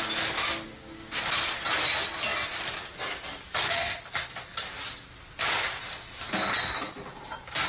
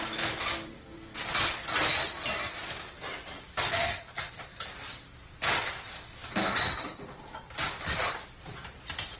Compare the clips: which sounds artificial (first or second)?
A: second